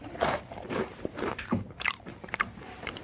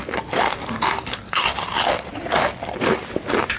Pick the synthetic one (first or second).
first